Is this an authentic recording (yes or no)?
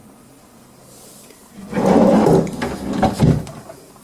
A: yes